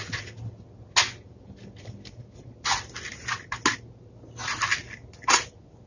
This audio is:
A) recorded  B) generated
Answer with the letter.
A